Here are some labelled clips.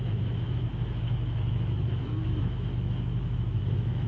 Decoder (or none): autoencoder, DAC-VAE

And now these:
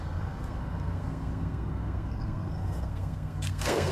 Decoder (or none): codec, SNAC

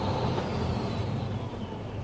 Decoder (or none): vocoder, BigVGAN v2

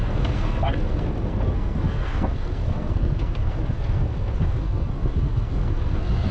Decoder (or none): codec, SNAC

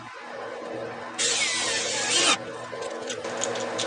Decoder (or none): none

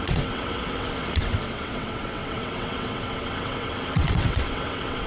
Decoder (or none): vocoder, WaveNeXt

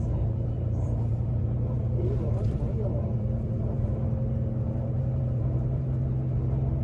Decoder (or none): vocoder, BigVGAN v2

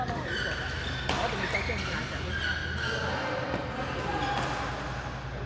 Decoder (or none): none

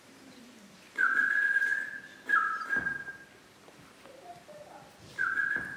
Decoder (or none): vocoder, BigVGAN v2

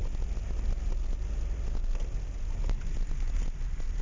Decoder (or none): none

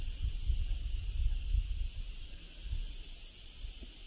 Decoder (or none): none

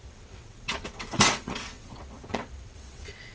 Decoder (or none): vocoder, WaveNeXt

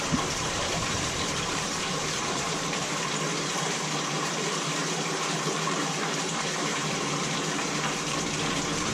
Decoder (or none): vocoder, BigVGAN v2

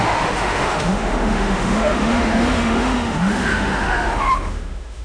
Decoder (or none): autoencoder, DAC-VAE